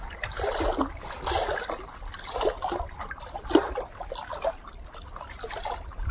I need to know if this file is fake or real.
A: real